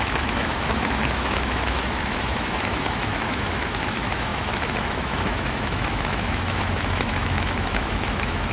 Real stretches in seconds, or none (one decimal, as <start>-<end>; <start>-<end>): none